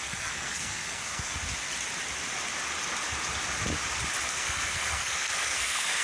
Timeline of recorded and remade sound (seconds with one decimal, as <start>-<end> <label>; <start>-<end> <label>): 0.0-1.4 remade; 1.4-4.3 recorded; 4.3-6.0 remade